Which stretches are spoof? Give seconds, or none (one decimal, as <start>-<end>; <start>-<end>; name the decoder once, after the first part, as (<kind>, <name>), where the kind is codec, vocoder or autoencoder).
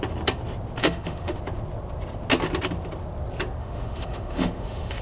0.8-1.4 (autoencoder, DAC-VAE); 3.6-5.0